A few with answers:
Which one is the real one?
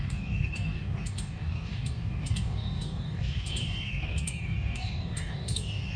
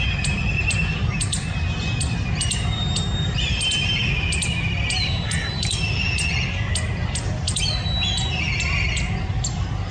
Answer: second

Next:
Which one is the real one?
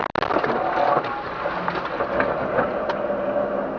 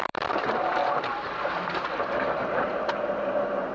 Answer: first